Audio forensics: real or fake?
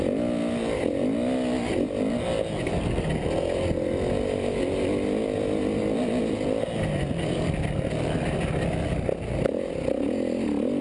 real